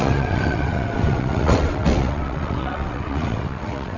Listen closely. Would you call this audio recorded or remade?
remade